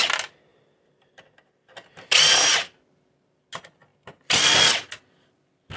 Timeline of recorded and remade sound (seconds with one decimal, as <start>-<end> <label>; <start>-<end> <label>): 0.0-5.8 recorded